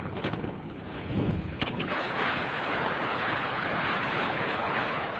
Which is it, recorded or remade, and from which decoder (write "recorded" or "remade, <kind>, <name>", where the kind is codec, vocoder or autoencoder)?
remade, codec, HILCodec